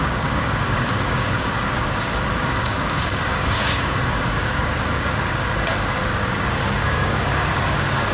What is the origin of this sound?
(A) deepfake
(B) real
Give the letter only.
A